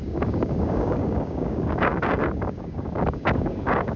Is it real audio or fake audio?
fake